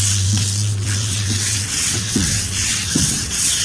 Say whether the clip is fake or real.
fake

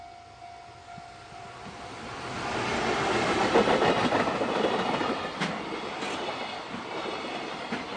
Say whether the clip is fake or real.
real